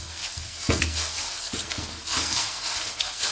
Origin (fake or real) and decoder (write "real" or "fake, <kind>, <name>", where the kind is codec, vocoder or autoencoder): fake, codec, SNAC